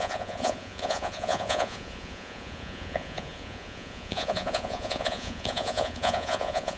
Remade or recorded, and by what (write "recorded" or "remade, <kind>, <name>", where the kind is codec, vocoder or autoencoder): remade, vocoder, Vocos